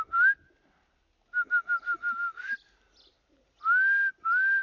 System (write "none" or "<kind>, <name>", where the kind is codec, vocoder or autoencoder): none